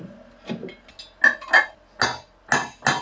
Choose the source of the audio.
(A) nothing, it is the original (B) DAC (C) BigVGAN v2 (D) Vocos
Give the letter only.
A